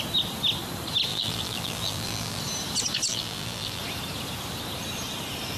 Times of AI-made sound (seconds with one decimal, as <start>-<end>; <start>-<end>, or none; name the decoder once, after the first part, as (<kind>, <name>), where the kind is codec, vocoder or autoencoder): 1.1-2.4 (vocoder, BigVGAN v2); 3.1-3.8